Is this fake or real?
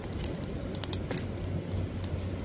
real